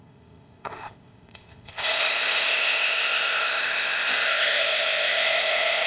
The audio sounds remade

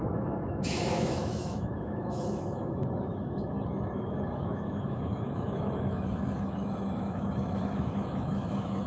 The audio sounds remade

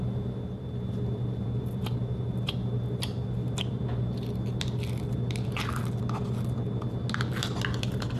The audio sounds recorded